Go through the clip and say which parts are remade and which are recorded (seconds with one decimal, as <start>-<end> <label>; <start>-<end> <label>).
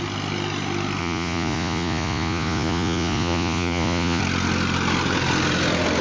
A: 0.0-1.0 recorded; 1.0-4.2 remade; 4.2-6.0 recorded